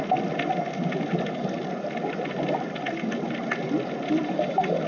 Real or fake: real